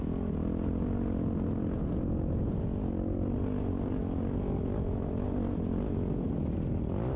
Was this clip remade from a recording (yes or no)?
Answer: no